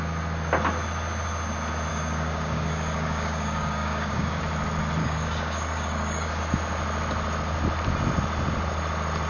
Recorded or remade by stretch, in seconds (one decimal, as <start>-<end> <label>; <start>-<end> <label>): 0.0-1.9 recorded; 1.9-4.4 remade; 4.4-5.0 recorded; 5.0-6.4 remade; 6.4-9.3 recorded